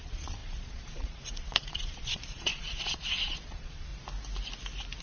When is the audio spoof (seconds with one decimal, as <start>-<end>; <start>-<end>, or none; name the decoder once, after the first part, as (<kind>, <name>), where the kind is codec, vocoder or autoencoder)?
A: 0.0-3.9 (vocoder, Vocos)